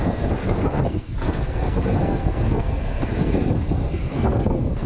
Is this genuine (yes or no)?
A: no